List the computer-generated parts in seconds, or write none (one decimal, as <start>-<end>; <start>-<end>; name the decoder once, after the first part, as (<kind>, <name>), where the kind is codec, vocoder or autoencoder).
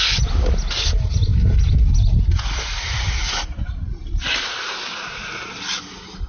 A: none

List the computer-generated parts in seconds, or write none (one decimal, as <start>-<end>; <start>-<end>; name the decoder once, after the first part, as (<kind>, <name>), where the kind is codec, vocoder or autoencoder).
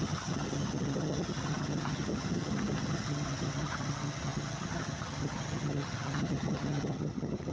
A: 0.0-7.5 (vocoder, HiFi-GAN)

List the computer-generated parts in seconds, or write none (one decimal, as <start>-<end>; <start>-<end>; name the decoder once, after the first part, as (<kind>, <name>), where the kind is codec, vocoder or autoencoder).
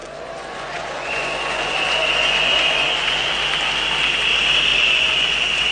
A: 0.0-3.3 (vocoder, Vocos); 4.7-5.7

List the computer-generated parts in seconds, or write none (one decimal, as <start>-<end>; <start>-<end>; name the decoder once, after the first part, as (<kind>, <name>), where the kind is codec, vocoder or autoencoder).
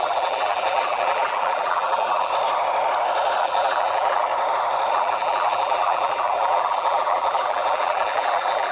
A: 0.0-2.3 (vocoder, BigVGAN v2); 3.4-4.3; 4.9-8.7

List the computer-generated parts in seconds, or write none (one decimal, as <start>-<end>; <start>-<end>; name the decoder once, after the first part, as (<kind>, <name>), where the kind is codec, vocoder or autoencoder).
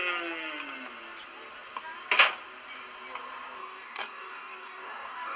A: 3.6-5.4 (codec, DAC)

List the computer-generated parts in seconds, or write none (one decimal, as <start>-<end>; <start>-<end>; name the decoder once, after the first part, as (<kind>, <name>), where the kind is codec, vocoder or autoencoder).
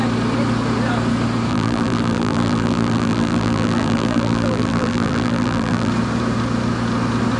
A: 1.5-5.9 (vocoder, BigVGAN v2)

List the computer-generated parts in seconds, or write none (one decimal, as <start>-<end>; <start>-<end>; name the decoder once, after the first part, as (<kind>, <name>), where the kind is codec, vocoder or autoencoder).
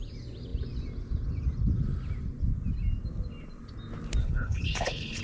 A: 4.2-5.2 (codec, HILCodec)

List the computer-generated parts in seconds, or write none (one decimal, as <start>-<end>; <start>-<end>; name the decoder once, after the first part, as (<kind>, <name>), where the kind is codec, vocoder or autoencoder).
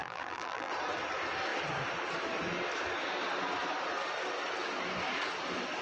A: 0.0-0.7 (vocoder, BigVGAN v2)